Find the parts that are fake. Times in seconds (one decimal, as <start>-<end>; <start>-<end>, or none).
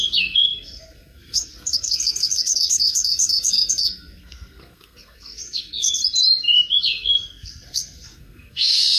0.0-6.0; 6.8-9.0